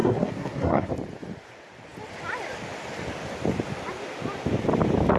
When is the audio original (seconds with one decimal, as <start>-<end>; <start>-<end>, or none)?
0.9-5.2